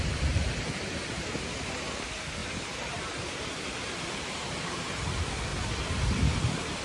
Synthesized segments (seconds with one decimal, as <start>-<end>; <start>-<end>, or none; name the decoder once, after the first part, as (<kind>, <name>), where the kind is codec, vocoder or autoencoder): 2.4-4.9 (vocoder, BigVGAN v2); 5.5-6.8